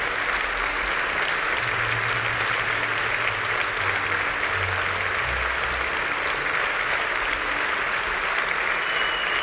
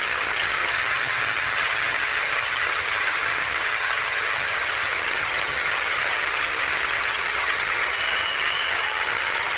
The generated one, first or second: second